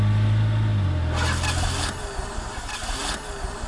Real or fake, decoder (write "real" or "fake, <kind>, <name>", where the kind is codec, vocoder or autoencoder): real